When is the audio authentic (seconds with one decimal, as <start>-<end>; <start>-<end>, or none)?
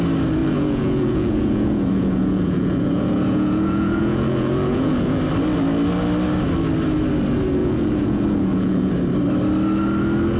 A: 0.0-0.4; 5.2-7.6; 8.9-10.4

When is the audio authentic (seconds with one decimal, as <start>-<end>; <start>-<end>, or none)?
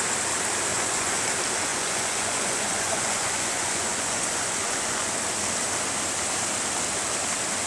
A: 0.0-0.7; 1.2-1.7; 5.1-7.7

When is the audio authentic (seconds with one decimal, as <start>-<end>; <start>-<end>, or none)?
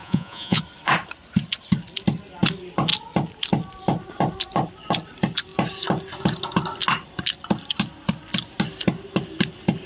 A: 0.6-9.9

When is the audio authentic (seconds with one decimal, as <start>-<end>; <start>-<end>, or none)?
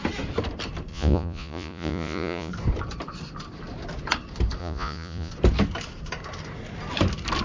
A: 0.0-0.9; 2.5-4.6; 5.3-7.4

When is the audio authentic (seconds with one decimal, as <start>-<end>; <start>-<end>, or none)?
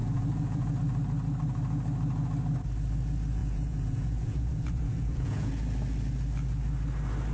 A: 0.8-3.4; 5.5-7.3